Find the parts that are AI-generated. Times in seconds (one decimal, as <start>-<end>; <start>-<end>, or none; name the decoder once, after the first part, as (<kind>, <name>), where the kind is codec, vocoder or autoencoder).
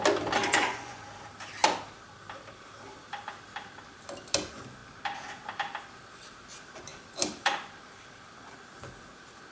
0.4-1.0 (vocoder, Vocos)